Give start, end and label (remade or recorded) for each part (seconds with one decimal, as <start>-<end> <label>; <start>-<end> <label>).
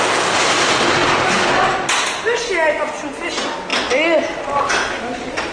0.0-5.5 recorded